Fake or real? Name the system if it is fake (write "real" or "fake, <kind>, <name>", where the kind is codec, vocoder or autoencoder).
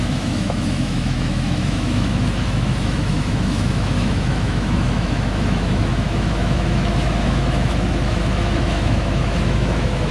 fake, autoencoder, DAC-VAE